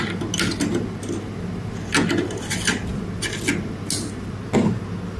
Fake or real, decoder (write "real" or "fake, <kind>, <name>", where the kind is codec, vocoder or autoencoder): real